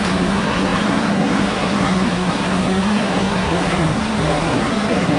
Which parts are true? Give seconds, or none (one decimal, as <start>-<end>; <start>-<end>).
none